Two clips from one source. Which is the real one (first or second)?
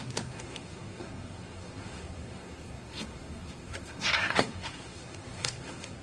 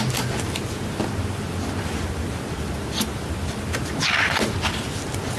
second